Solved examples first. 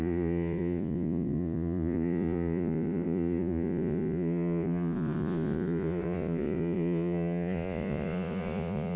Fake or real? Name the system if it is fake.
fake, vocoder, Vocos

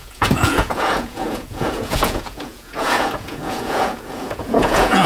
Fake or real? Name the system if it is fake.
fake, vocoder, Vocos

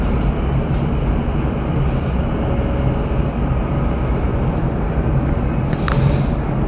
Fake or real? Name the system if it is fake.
real